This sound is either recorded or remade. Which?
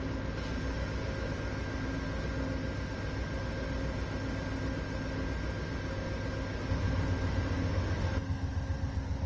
recorded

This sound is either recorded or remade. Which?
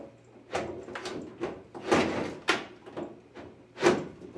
recorded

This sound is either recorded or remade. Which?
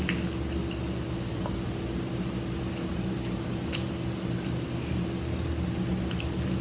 recorded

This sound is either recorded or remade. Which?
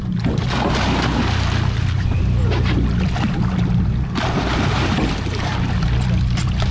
recorded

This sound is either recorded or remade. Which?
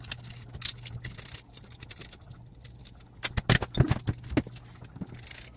recorded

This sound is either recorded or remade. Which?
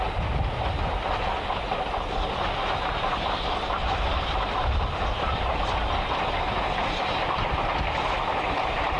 recorded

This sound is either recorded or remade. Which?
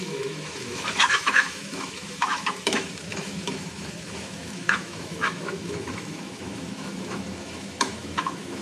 remade